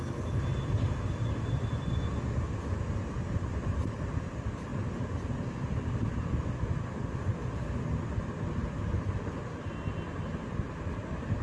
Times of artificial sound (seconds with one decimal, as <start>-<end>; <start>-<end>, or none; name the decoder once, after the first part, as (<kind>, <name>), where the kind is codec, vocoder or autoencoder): none